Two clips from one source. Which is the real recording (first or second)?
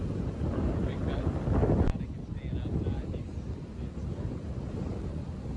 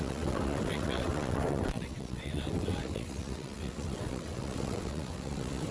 first